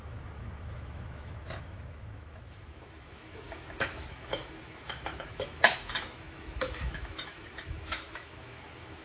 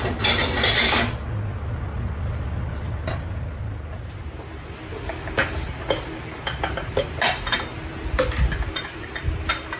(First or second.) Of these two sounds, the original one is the second